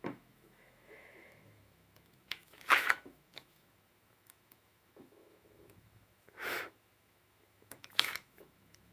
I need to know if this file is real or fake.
fake